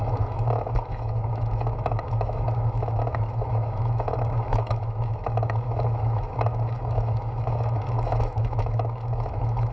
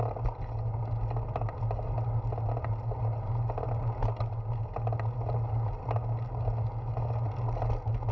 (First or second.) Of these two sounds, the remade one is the first